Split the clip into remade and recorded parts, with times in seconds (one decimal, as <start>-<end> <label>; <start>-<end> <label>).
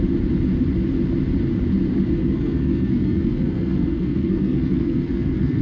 0.0-2.2 recorded; 2.2-5.6 remade